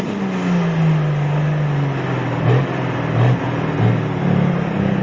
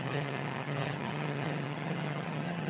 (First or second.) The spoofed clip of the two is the second